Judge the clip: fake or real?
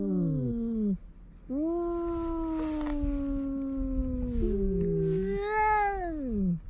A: real